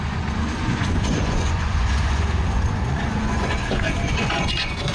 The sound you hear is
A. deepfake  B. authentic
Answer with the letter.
A